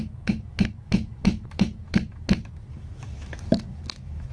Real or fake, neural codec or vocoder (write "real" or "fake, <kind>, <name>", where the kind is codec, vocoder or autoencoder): fake, autoencoder, DAC-VAE